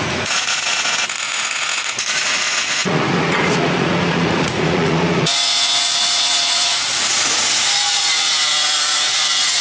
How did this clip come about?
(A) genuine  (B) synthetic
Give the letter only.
B